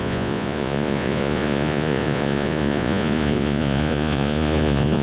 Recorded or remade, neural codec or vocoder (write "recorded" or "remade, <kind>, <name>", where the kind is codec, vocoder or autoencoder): remade, vocoder, Vocos